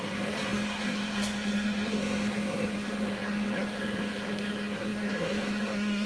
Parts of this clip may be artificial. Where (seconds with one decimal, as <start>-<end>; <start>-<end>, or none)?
0.0-6.1